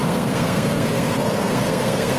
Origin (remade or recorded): remade